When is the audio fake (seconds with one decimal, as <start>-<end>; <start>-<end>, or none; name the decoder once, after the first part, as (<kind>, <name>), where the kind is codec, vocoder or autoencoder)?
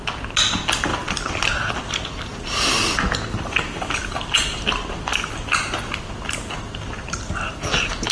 0.9-1.7 (vocoder, BigVGAN v2)